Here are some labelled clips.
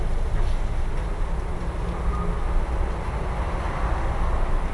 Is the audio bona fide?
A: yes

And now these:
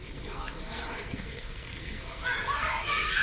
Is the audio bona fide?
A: no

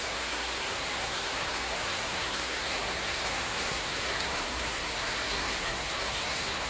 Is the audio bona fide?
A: no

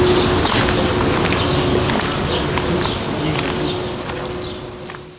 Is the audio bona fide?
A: yes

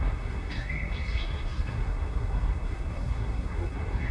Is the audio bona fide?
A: no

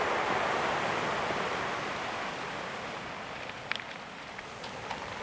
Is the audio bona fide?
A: yes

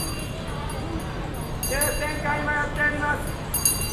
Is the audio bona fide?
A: yes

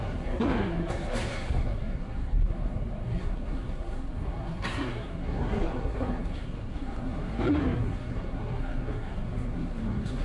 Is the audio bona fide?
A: no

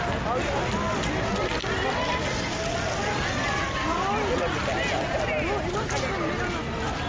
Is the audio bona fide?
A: yes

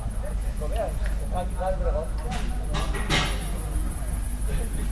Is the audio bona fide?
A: yes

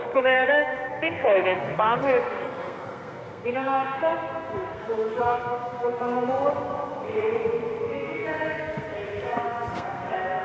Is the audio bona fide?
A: no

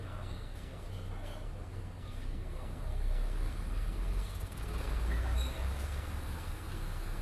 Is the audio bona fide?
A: no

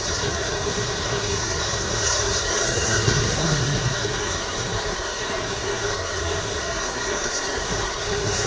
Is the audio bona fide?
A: no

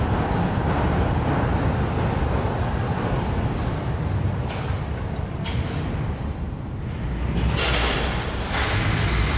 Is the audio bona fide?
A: yes